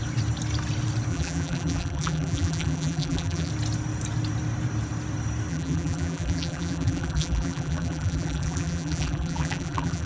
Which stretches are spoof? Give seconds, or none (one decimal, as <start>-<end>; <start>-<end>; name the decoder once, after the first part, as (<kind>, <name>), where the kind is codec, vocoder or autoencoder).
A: 1.1-3.5 (vocoder, BigVGAN v2); 5.5-10.1